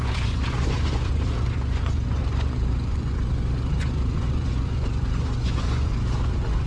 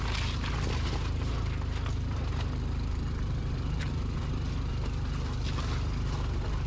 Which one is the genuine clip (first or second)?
second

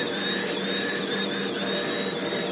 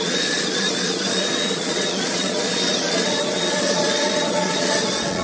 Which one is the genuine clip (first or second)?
first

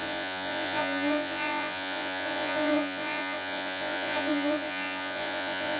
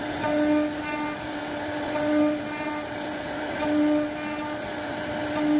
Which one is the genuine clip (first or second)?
second